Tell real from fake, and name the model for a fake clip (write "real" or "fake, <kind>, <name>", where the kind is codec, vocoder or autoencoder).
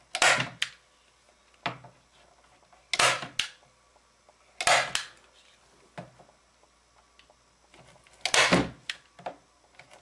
real